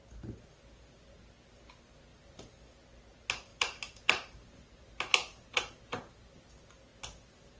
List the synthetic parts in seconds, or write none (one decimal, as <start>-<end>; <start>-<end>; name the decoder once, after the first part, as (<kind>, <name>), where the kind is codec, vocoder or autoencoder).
2.1-2.7 (vocoder, BigVGAN v2); 3.5-6.5